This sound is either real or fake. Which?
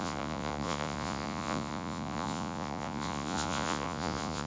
fake